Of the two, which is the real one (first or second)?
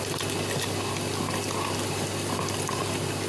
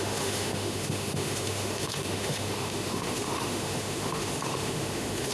first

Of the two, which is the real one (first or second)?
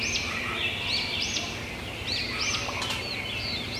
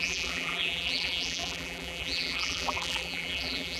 first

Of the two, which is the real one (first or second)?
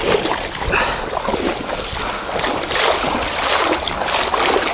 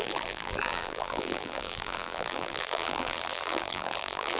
first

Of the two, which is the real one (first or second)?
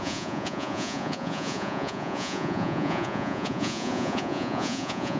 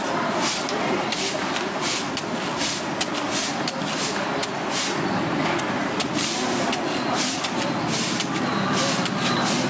second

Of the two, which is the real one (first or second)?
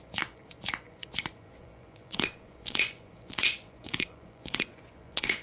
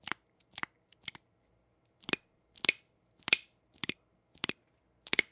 second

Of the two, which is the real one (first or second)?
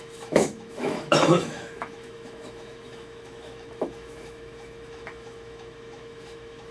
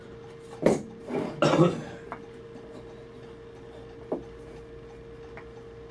second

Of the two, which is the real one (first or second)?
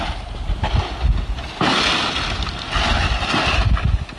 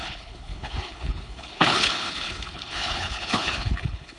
first